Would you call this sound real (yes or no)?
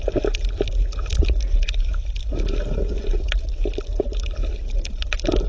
yes